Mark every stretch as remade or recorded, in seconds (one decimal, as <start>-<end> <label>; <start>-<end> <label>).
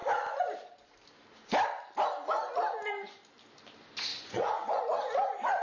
0.0-4.1 recorded; 4.1-4.8 remade; 4.8-5.6 recorded